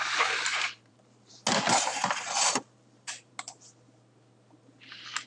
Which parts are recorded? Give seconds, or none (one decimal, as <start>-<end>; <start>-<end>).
0.0-0.5; 1.3-1.9; 3.3-5.3